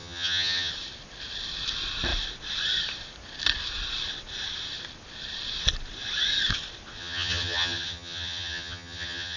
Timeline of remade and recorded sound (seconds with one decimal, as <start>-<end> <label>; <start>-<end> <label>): 0.0-0.7 remade; 0.7-7.0 recorded; 7.0-9.4 remade